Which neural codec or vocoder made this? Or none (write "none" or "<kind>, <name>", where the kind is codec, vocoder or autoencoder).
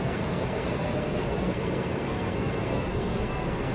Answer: codec, SNAC